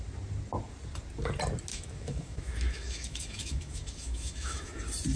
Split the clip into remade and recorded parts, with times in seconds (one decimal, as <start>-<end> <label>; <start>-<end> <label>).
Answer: 0.0-1.7 recorded; 1.7-4.8 remade; 4.8-5.2 recorded